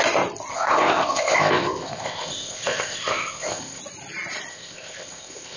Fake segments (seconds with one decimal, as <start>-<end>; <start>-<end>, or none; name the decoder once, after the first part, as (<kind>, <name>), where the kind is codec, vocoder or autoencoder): 0.5-3.8 (codec, ZipCodec); 4.5-5.6